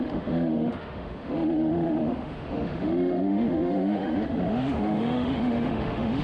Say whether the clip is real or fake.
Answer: fake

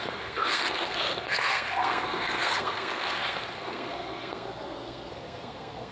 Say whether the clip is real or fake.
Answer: fake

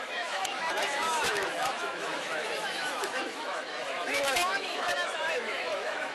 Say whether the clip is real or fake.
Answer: fake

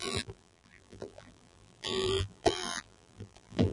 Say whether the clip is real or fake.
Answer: fake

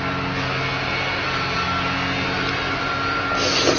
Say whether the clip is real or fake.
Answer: real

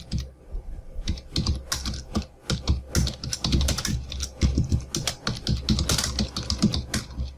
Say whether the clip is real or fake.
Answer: real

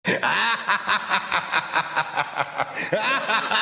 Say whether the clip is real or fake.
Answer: real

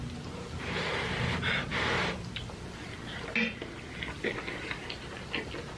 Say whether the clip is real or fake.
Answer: real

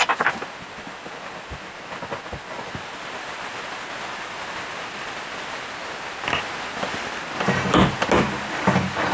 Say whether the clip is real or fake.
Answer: real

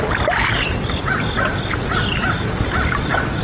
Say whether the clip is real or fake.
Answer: real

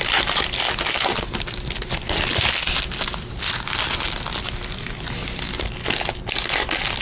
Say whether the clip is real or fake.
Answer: real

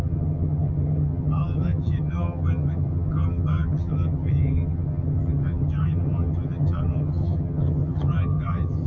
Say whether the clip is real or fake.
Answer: fake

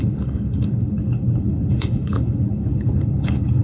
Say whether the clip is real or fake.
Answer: fake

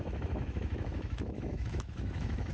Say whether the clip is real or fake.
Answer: fake